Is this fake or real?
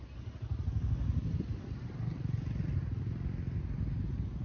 real